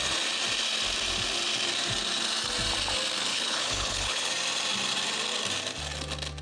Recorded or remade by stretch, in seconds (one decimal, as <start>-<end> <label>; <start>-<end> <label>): 0.0-3.3 recorded; 3.3-4.3 remade; 4.3-6.4 recorded